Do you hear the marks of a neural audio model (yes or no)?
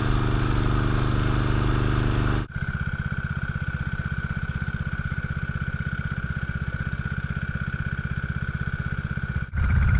no